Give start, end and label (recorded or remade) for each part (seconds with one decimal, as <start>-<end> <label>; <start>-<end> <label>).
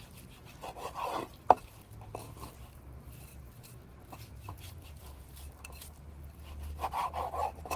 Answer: 0.0-7.8 recorded